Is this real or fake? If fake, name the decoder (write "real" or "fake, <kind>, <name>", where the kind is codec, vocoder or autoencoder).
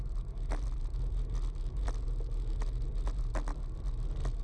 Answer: real